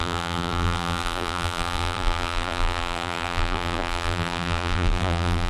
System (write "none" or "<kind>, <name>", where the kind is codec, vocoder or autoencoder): vocoder, BigVGAN v2